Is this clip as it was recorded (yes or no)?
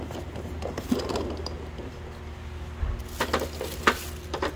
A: yes